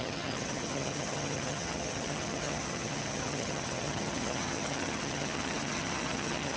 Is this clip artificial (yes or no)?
yes